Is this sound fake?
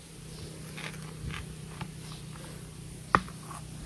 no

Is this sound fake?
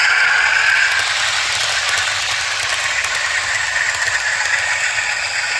no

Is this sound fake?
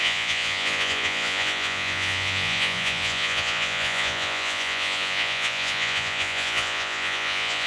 yes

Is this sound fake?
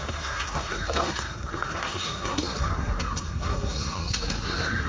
yes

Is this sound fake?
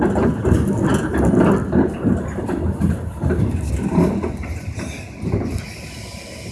no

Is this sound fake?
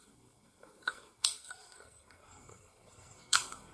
yes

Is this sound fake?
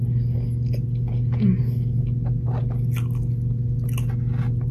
no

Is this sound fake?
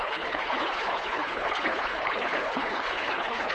yes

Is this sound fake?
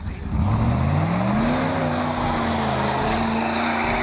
no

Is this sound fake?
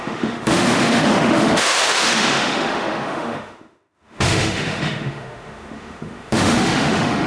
yes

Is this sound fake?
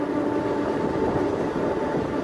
no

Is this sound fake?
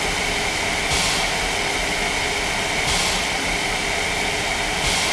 no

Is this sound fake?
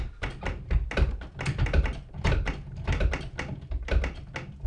no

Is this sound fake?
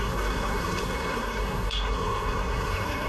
yes